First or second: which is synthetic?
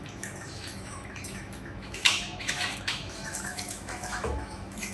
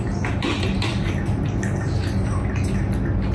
first